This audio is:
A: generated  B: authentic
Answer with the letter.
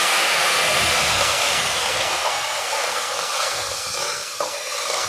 A